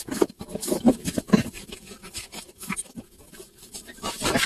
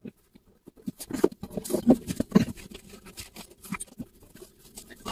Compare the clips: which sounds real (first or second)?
second